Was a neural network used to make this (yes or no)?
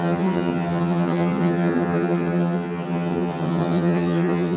yes